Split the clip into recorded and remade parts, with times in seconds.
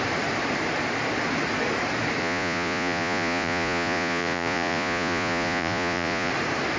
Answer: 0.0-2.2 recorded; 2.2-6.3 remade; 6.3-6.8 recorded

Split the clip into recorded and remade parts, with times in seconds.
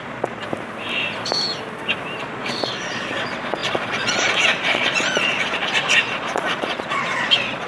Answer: 0.0-0.4 remade; 0.4-2.2 recorded; 2.2-7.7 remade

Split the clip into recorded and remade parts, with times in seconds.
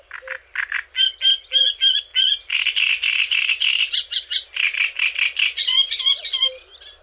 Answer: 0.0-7.0 recorded